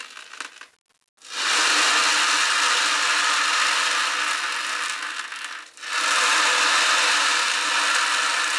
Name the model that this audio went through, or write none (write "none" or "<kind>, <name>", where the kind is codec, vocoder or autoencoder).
none